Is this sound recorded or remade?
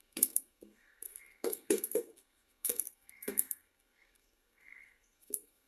remade